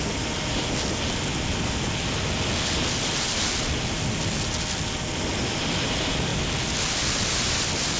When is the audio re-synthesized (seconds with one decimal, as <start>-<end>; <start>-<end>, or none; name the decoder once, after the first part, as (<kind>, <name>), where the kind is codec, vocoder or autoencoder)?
none